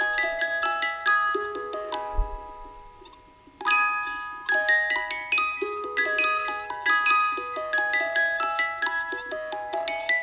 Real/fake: real